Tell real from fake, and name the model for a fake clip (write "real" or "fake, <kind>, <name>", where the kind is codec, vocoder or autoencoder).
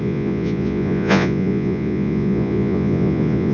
fake, vocoder, Vocos